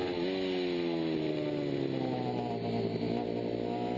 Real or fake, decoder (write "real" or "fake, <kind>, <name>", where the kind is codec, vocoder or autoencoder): real